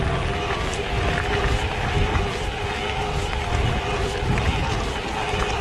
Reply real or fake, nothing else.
real